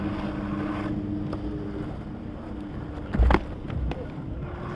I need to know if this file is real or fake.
real